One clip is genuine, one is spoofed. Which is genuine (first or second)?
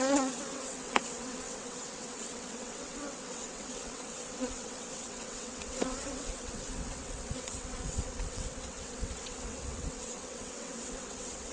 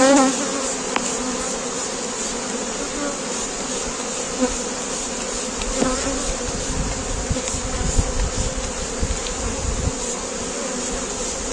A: second